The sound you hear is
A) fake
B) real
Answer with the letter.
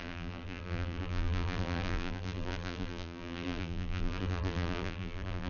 A